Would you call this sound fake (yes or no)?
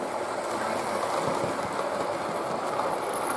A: no